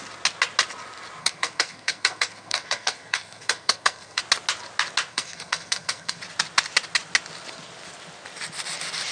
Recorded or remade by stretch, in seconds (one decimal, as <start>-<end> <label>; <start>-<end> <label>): 0.0-1.2 recorded; 1.2-4.2 remade; 4.2-5.1 recorded; 5.1-6.2 remade; 6.2-9.1 recorded